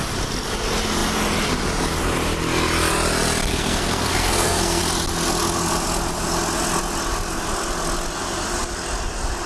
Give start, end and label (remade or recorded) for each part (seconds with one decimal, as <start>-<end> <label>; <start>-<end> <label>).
0.0-3.5 recorded; 3.5-4.8 remade; 4.8-9.5 recorded